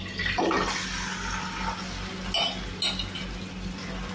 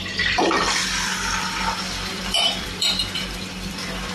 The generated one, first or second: second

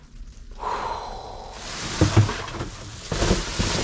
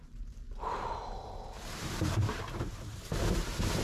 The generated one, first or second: second